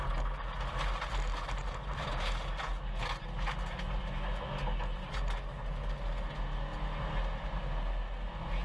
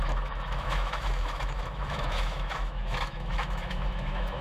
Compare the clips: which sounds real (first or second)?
first